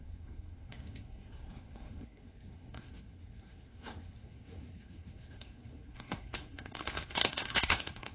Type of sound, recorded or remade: remade